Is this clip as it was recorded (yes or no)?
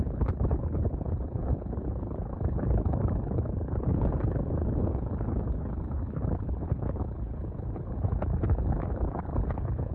no